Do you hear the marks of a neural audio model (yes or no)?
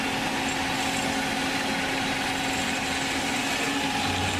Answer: no